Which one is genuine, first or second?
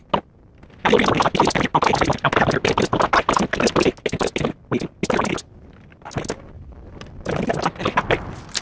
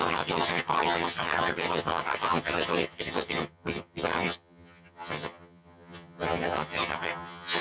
first